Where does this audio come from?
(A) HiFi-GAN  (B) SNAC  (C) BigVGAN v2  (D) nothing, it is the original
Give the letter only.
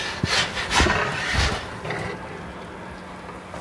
D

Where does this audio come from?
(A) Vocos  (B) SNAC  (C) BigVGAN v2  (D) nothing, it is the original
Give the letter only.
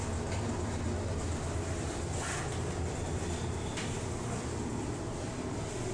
D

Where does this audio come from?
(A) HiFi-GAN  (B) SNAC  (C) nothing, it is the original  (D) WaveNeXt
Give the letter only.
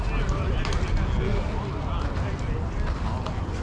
C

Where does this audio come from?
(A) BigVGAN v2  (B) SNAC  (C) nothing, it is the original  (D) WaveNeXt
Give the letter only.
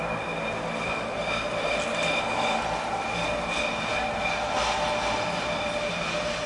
C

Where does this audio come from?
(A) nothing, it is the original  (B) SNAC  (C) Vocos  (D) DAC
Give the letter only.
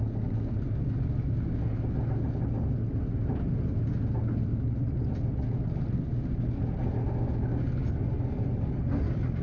A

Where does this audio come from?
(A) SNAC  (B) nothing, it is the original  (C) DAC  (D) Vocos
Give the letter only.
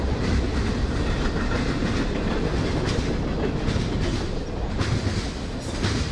B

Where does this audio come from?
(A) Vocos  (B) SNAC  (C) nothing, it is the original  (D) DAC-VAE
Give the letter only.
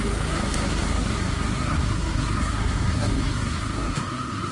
B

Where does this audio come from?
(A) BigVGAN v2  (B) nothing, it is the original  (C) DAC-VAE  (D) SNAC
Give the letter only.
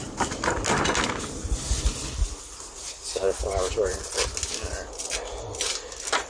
B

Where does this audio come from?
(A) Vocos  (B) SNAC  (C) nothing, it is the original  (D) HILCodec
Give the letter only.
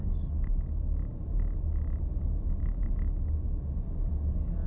C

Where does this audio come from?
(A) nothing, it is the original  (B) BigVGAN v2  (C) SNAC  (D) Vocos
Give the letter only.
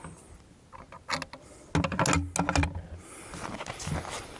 A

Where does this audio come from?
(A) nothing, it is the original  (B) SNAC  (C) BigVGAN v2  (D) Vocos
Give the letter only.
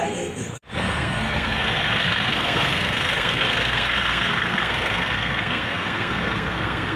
B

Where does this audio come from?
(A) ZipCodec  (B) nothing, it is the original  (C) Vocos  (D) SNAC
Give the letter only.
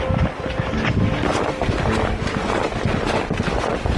B